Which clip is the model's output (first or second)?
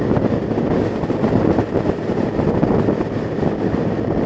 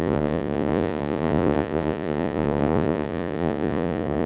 second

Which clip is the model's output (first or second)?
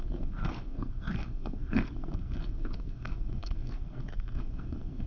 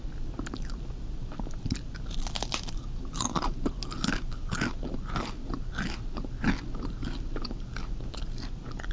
first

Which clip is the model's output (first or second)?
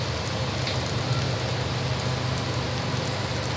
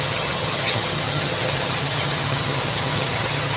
second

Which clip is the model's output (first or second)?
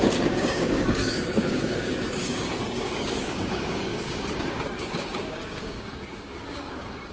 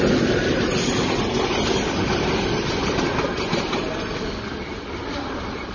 first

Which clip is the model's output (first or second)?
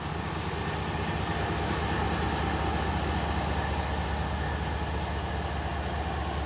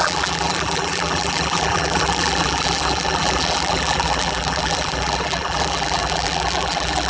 second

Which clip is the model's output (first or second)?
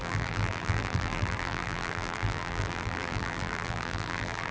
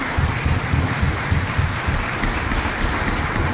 first